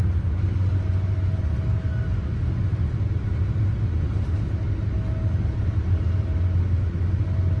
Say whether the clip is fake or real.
real